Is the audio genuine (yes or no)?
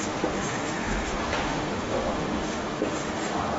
no